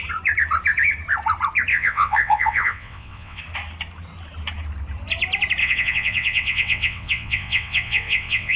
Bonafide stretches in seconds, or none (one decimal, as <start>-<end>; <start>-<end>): 0.0-1.7; 3.4-5.6